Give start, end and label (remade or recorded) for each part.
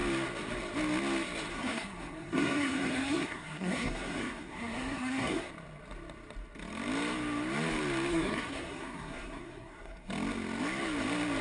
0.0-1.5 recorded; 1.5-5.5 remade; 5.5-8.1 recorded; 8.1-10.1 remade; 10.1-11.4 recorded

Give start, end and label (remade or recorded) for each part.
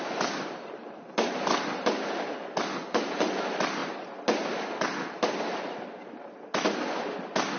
0.0-7.6 recorded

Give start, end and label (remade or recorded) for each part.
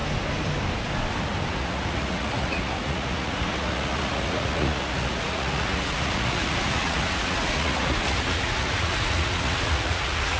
0.0-1.5 recorded; 1.5-10.4 remade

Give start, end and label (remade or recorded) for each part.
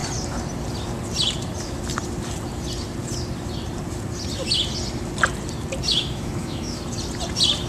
0.0-5.9 recorded; 5.9-6.8 remade; 6.8-7.7 recorded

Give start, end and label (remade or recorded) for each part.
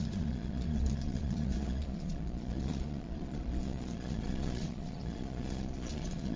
0.0-6.4 remade